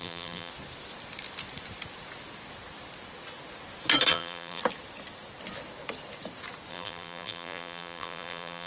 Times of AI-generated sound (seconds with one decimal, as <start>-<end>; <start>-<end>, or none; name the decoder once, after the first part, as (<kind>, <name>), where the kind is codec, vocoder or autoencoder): 0.0-0.5 (vocoder, BigVGAN v2); 4.1-4.6; 6.7-8.7